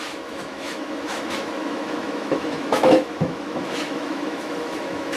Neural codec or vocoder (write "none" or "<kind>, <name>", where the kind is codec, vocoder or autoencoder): autoencoder, DAC-VAE